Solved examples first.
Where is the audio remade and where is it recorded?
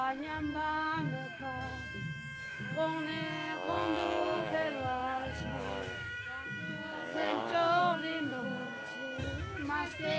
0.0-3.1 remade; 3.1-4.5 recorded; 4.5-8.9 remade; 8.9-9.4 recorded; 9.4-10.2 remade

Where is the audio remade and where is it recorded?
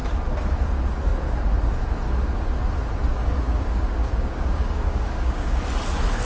0.0-3.1 recorded; 3.1-5.6 remade; 5.6-6.2 recorded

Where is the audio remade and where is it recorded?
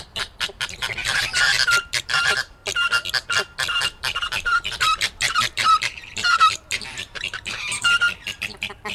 0.0-2.6 remade; 2.6-3.8 recorded; 3.8-8.9 remade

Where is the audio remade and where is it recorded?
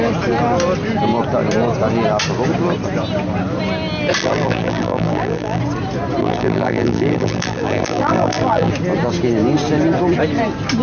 0.0-4.2 recorded; 4.2-5.6 remade; 5.6-6.2 recorded; 6.2-8.7 remade; 8.7-10.8 recorded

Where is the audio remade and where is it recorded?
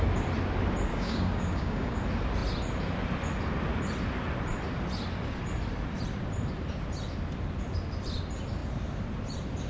0.0-0.9 recorded; 0.9-2.0 remade; 2.0-9.7 recorded